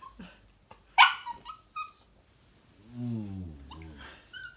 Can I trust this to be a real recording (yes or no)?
yes